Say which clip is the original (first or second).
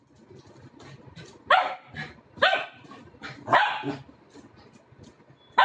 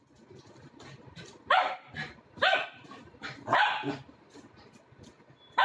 first